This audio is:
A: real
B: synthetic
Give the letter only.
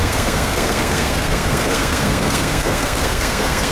B